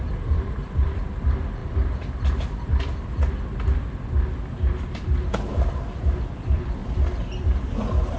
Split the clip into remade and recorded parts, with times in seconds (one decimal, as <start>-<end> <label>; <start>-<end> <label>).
0.0-1.6 remade; 1.6-6.2 recorded; 6.2-6.8 remade; 6.8-8.2 recorded